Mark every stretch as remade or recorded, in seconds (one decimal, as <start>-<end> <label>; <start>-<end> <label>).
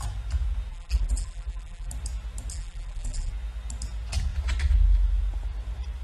0.0-0.7 recorded; 0.7-1.9 remade; 1.9-2.5 recorded; 2.5-3.3 remade; 3.3-6.0 recorded